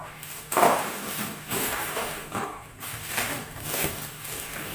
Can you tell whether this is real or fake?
fake